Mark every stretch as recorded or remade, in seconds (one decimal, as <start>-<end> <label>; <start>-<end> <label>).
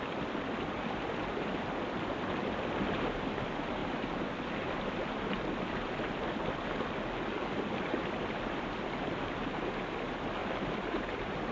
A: 0.0-10.4 recorded; 10.4-11.5 remade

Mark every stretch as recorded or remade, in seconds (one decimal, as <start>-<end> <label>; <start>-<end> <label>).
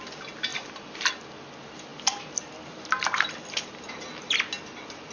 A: 0.0-0.5 recorded; 0.5-1.1 remade; 1.1-5.1 recorded